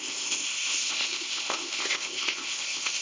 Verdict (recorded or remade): remade